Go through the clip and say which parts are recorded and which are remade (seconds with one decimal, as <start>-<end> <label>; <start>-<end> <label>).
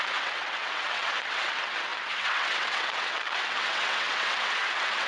0.0-5.1 remade